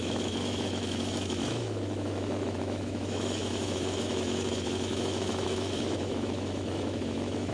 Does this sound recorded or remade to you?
remade